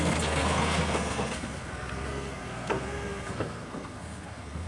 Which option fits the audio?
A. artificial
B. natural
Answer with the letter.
A